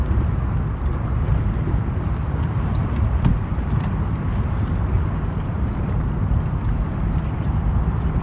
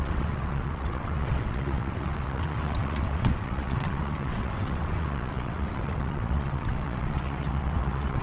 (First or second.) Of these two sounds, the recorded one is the first